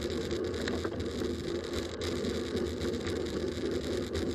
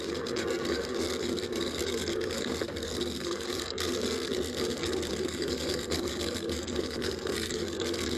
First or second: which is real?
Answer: first